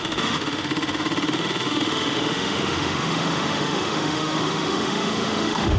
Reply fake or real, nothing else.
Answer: fake